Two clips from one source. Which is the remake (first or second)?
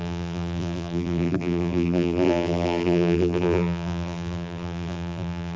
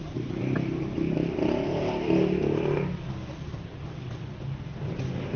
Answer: first